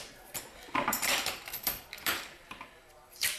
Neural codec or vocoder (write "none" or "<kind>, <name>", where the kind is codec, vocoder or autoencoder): vocoder, BigVGAN v2